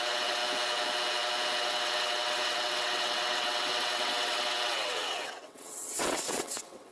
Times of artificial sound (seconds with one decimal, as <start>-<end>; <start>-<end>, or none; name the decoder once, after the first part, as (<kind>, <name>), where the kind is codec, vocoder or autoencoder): 0.0-0.4 (vocoder, WaveNeXt); 1.6-6.9